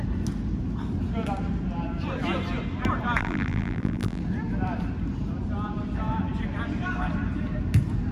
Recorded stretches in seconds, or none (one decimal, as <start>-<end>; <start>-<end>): 0.0-3.2; 4.2-8.1